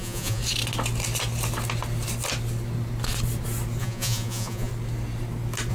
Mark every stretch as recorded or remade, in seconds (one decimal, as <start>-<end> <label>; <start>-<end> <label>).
0.0-0.4 remade; 0.4-3.8 recorded; 3.8-4.7 remade; 4.7-5.7 recorded